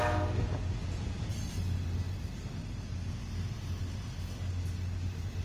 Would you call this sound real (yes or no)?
yes